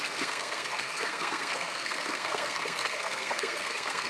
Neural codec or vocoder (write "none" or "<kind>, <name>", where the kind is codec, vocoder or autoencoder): codec, SNAC